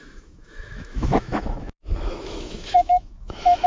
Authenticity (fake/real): fake